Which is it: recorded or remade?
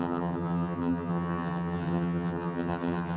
remade